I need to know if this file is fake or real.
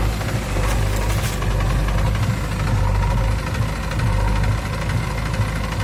real